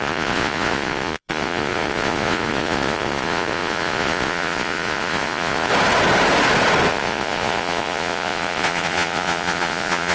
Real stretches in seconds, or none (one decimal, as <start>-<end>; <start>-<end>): 5.7-6.9